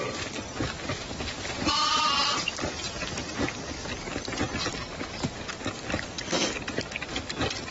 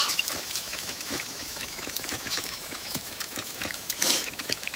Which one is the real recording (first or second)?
first